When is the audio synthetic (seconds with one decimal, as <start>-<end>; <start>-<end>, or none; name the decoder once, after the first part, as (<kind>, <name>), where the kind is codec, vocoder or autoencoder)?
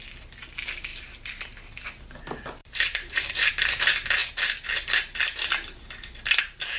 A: 2.6-3.5 (vocoder, BigVGAN v2)